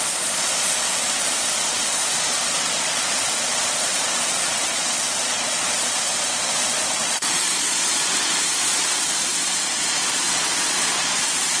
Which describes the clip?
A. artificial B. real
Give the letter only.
A